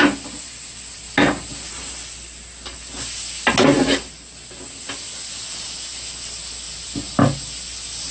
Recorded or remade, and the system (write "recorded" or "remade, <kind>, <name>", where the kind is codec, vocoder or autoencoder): recorded